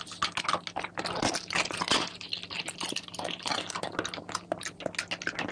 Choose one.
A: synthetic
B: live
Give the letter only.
B